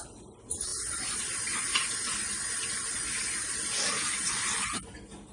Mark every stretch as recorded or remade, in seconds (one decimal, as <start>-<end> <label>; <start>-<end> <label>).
0.0-5.3 recorded